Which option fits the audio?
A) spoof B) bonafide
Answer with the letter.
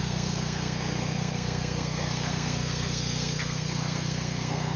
A